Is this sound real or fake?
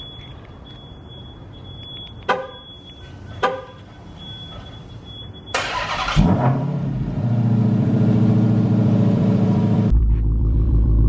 fake